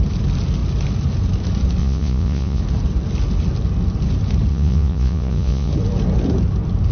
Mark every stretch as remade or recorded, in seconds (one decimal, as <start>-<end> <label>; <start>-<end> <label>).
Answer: 0.0-1.8 recorded; 1.8-2.6 remade; 2.6-4.5 recorded; 4.5-5.7 remade; 5.7-6.9 recorded